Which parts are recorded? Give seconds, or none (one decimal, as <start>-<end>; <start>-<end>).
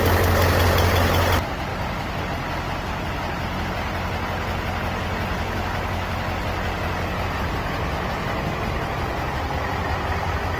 0.0-10.6